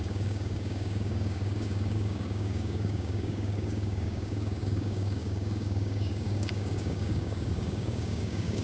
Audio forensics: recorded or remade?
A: remade